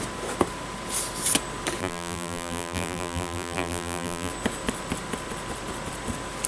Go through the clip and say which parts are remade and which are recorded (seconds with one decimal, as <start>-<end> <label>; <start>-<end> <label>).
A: 0.0-1.8 recorded; 1.8-4.3 remade; 4.3-6.5 recorded